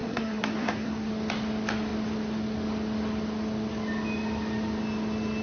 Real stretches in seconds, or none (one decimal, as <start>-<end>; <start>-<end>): 1.1-5.4